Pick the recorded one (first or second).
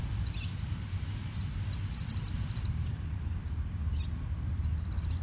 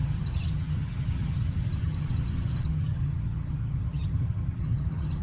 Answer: first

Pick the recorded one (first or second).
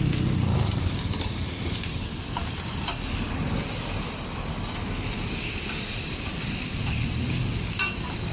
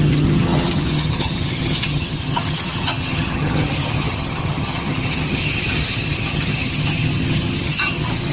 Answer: first